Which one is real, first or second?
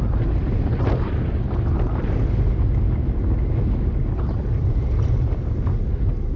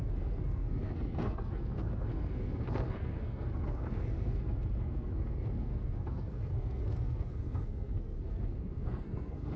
first